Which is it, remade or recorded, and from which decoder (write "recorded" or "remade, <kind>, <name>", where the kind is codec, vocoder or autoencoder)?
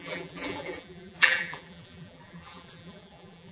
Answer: remade, vocoder, BigVGAN v2